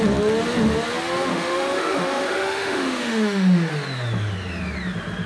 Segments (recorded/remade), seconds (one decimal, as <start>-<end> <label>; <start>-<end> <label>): 0.0-1.3 recorded; 1.3-3.7 remade; 3.7-5.3 recorded